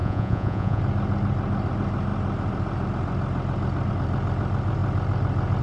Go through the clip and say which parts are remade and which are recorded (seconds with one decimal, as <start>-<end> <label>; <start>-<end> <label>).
0.0-0.8 remade; 0.8-5.6 recorded